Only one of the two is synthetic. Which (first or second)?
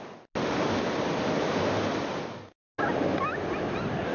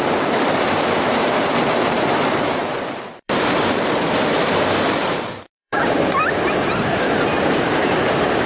second